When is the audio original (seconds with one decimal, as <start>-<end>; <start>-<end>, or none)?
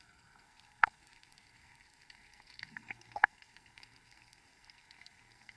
none